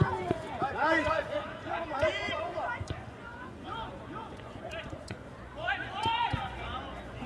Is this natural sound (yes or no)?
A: no